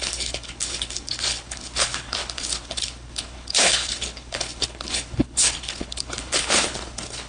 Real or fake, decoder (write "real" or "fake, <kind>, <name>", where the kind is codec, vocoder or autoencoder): fake, codec, HILCodec